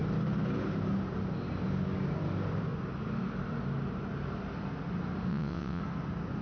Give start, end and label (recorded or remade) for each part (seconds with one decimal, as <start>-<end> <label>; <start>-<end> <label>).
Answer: 0.0-5.3 recorded; 5.3-5.8 remade; 5.8-6.4 recorded